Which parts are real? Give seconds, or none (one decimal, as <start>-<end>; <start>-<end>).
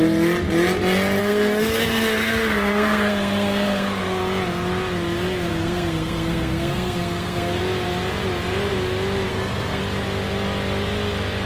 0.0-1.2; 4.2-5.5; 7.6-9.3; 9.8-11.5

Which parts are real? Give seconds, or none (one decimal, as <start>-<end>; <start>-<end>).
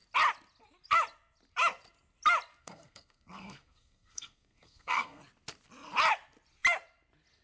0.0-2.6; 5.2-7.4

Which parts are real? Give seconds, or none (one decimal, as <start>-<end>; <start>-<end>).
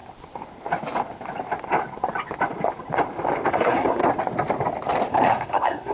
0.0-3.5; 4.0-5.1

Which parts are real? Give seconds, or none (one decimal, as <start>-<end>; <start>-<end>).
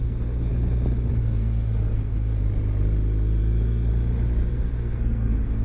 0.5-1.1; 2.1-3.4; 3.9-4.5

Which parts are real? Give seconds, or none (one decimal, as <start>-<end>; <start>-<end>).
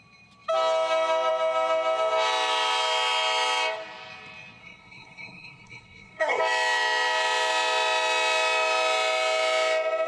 0.0-4.6; 6.4-10.1